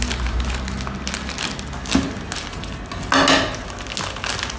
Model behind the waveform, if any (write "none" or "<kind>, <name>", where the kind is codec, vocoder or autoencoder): none